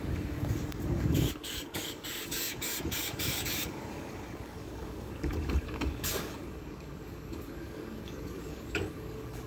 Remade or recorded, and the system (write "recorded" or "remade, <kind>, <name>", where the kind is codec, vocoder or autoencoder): remade, codec, DAC